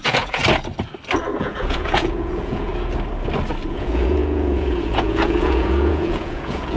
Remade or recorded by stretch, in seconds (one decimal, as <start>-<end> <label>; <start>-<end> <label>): 0.0-0.4 remade; 0.4-1.4 recorded; 1.4-2.7 remade; 2.7-3.7 recorded; 3.7-6.8 remade

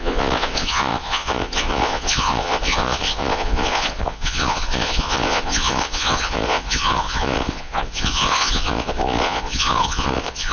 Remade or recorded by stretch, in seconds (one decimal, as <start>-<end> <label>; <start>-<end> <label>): 0.0-10.5 remade

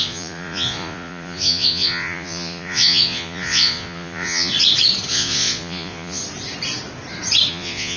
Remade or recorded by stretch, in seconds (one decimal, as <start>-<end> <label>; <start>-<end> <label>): 0.0-4.5 remade; 4.5-5.1 recorded; 5.1-6.2 remade; 6.2-7.5 recorded; 7.5-8.0 remade

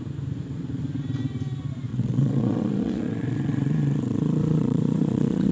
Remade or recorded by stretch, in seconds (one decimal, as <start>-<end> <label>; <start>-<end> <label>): 0.0-1.9 recorded; 1.9-5.5 remade